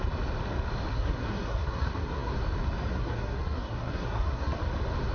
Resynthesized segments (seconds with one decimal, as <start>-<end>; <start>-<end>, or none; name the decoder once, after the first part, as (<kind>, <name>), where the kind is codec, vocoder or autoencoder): 0.9-2.3 (codec, SNAC); 2.9-4.6